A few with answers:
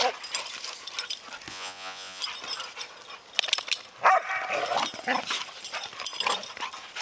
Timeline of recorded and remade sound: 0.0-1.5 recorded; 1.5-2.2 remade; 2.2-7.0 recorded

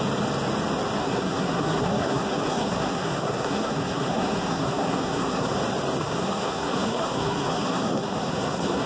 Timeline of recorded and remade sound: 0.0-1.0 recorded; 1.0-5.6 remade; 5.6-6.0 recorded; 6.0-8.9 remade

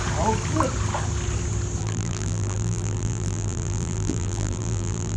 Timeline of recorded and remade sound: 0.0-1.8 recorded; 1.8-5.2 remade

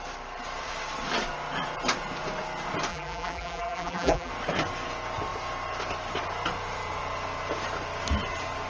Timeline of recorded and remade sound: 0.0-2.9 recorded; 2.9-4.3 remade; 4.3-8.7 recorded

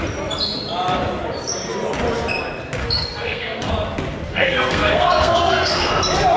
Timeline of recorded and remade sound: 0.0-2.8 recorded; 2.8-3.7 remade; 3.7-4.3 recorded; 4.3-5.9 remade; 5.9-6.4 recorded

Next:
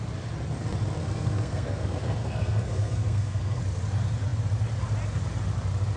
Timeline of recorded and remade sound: 0.0-1.0 recorded; 1.0-3.6 remade; 3.6-6.0 recorded